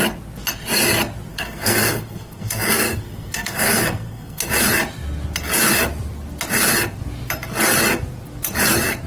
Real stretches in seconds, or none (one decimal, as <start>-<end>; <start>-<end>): 0.0-1.3; 4.5-9.1